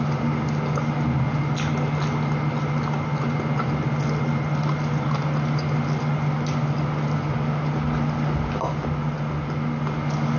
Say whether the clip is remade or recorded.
recorded